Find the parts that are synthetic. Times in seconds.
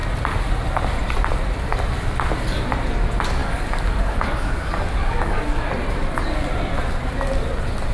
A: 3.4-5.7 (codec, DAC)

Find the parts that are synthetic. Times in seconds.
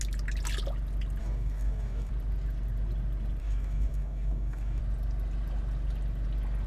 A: 1.2-2.1 (codec, DAC); 3.4-4.8